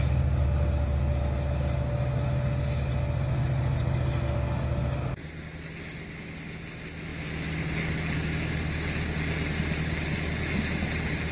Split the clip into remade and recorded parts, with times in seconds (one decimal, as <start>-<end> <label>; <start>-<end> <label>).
0.0-11.3 recorded